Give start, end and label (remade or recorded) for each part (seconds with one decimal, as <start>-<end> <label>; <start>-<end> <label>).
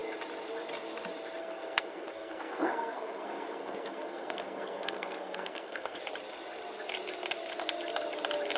0.0-1.4 recorded; 1.4-6.0 remade; 6.0-8.6 recorded